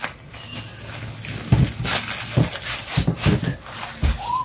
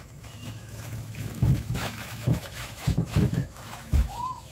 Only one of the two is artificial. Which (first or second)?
second